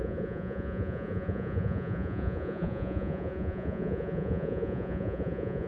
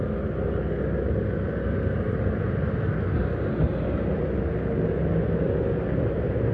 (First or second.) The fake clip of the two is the first